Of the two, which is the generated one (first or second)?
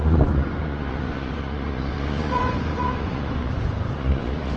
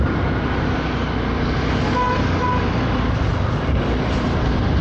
first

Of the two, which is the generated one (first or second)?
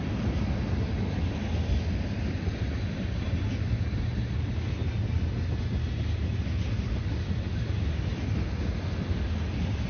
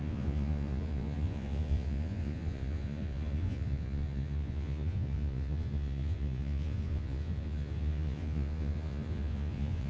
second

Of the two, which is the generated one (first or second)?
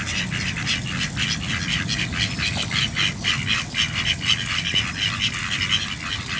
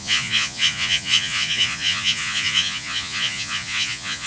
second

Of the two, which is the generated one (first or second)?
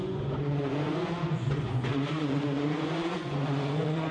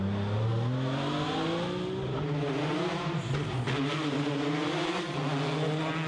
first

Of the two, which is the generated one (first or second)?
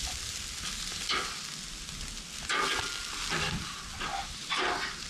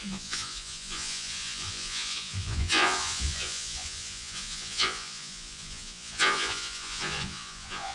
second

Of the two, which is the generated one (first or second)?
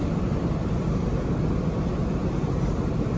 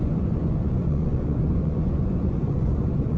second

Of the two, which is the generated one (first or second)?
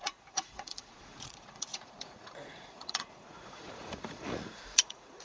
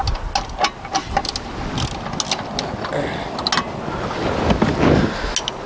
first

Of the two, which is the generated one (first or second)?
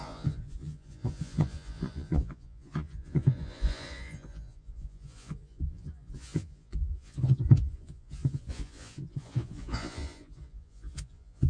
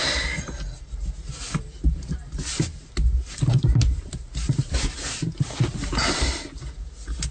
first